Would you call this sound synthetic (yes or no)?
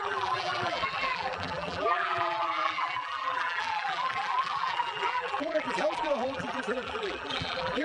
yes